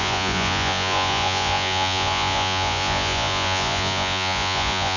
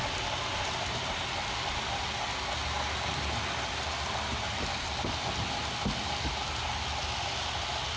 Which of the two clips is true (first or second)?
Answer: second